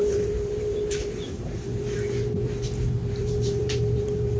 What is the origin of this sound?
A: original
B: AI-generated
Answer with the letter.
B